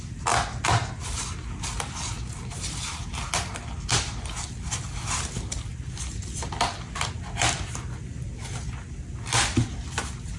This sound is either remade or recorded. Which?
recorded